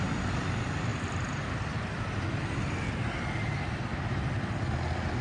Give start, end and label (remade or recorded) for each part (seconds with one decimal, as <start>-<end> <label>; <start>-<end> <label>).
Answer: 0.0-5.2 recorded